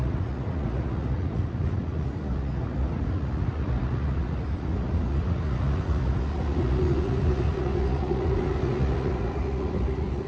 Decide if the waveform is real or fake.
fake